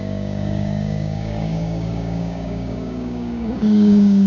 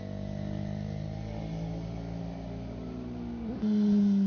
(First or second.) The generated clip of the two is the first